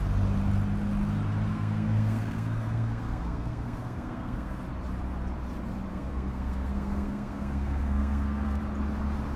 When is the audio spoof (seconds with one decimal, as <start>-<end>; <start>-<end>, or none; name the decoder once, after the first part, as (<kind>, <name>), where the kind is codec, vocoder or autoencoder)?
1.5-4.6 (codec, SNAC); 5.9-8.6